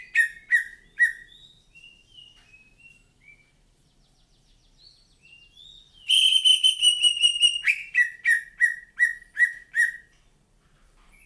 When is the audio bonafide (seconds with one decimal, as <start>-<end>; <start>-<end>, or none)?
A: 0.0-6.5